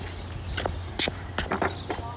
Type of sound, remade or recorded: recorded